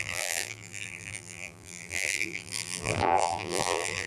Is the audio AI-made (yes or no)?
yes